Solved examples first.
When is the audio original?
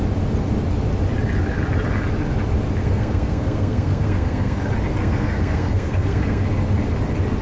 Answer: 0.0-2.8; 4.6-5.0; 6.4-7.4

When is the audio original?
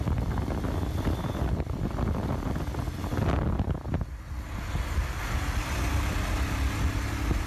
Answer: 0.0-7.5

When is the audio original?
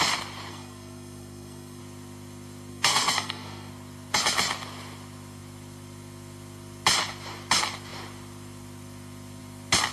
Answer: 0.0-0.5; 1.8-2.7; 3.7-9.9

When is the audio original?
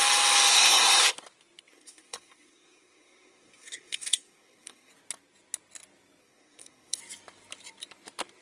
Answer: 0.0-0.5; 1.1-1.7; 4.9-6.2; 7.0-8.4